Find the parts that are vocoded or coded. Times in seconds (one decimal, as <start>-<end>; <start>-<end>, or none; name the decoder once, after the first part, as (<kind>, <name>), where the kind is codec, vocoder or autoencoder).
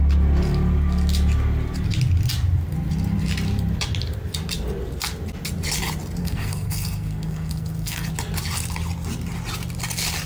6.2-8.1 (codec, SNAC)